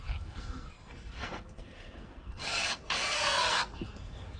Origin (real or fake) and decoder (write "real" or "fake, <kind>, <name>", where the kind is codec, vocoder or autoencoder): fake, codec, SNAC